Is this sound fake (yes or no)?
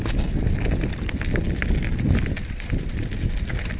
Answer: no